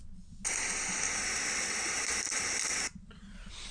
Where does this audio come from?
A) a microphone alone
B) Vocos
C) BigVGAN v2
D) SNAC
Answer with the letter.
A